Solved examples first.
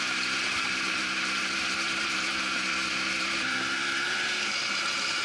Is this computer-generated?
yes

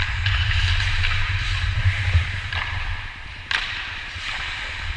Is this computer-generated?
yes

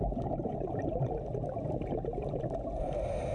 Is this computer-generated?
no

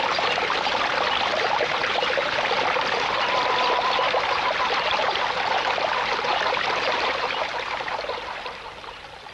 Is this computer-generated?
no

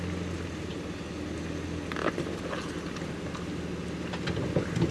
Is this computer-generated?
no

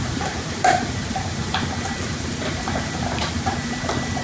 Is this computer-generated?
yes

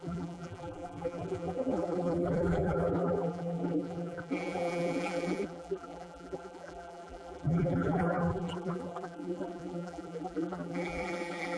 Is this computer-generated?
yes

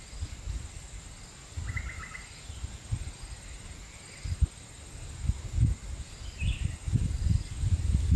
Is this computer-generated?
no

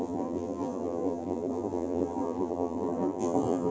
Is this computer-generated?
yes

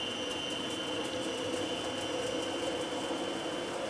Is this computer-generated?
no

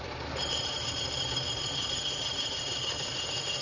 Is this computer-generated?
yes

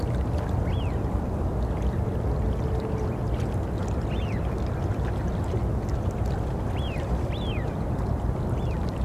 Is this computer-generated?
no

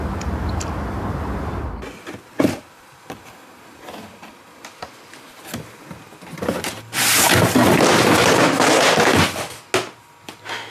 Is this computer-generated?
no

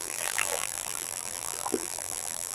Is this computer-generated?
yes